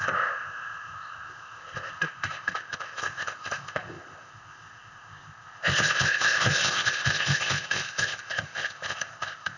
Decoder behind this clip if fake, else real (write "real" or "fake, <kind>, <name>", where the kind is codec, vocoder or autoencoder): fake, codec, ZipCodec